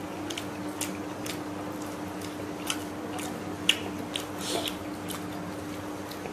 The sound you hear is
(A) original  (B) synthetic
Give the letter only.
A